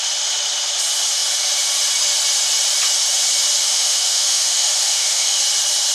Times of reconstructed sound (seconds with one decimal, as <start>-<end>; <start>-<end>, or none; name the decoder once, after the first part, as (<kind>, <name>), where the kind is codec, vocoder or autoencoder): 3.6-5.4 (autoencoder, DAC-VAE)